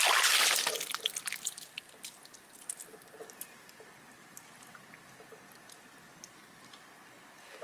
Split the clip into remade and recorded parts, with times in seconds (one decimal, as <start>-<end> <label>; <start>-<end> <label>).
0.0-7.6 recorded